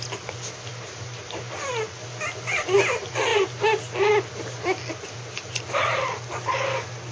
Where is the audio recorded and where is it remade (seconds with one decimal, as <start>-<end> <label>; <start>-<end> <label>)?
0.0-0.7 recorded; 0.7-1.4 remade; 1.4-7.1 recorded